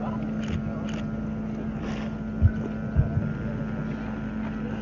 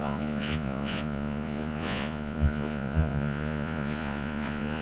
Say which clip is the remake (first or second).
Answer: second